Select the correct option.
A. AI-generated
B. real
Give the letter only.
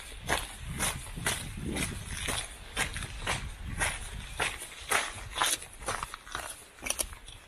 B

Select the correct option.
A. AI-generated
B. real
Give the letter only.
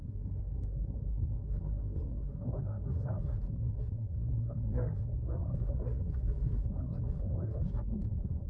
A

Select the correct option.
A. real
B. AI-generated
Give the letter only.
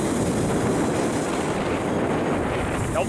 A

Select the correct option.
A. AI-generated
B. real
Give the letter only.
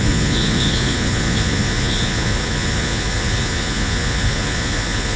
A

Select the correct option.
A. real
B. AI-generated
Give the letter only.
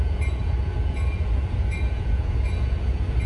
B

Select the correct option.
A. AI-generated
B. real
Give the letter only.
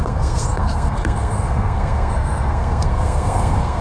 A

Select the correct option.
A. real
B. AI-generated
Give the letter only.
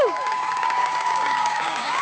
B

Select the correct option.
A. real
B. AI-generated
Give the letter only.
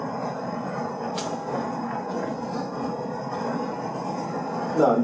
A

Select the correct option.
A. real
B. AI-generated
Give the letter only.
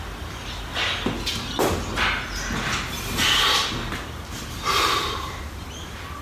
A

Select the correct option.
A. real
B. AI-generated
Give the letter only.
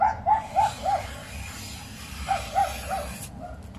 A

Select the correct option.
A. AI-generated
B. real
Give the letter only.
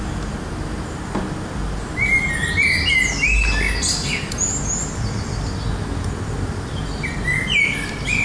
B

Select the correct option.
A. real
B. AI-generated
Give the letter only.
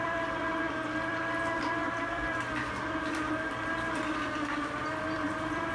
B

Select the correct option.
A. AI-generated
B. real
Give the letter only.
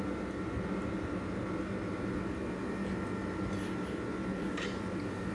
B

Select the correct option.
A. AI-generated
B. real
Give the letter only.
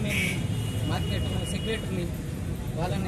B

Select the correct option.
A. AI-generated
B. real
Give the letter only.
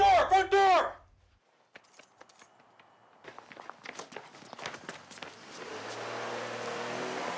B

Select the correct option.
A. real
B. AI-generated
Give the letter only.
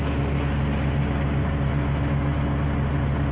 A